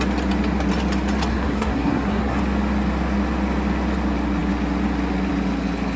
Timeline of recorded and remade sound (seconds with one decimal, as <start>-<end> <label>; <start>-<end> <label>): 0.0-1.3 recorded; 1.3-2.4 remade; 2.4-6.0 recorded